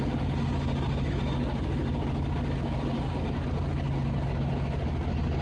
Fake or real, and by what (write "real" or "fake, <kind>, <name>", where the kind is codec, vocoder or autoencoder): real